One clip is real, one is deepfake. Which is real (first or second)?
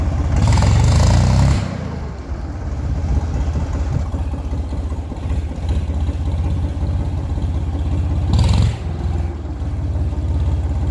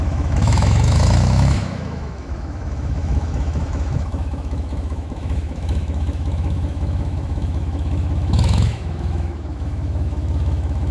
first